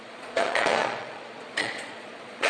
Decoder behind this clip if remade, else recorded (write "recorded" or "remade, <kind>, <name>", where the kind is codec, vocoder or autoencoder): remade, vocoder, Vocos